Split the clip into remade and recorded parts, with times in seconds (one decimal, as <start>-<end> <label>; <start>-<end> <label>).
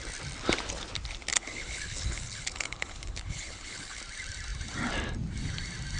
0.0-1.3 recorded; 1.3-4.0 remade; 4.0-6.0 recorded